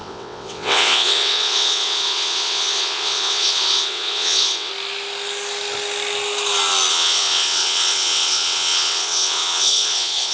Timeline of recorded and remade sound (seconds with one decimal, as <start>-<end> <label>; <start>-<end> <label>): 0.0-4.7 remade; 4.7-6.9 recorded; 6.9-10.3 remade